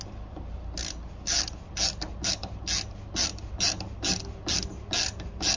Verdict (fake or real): real